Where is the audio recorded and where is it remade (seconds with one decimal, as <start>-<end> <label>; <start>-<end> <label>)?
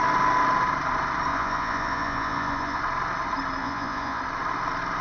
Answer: 0.0-1.3 recorded; 1.3-2.8 remade; 2.8-3.6 recorded; 3.6-4.2 remade; 4.2-5.0 recorded